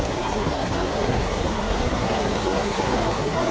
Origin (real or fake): fake